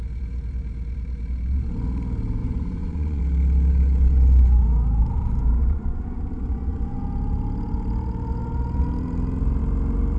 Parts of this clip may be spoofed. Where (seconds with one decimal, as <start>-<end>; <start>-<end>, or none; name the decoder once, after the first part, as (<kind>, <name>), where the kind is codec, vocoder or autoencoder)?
2.4-3.2 (vocoder, Vocos); 5.6-7.0